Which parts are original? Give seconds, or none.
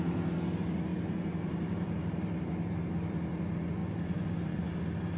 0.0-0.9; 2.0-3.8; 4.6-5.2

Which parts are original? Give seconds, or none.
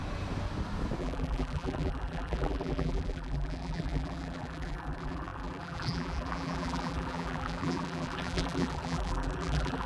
0.0-1.0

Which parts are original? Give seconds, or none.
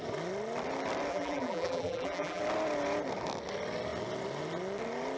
0.0-1.1; 2.4-5.2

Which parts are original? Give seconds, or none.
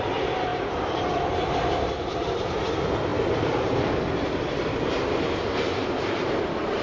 none